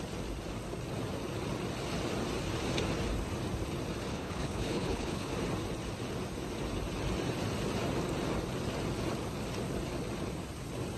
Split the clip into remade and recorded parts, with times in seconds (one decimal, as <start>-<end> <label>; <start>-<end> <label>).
0.0-4.1 recorded; 4.1-5.3 remade; 5.3-11.0 recorded